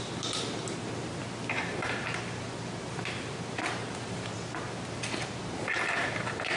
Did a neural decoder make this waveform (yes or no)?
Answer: no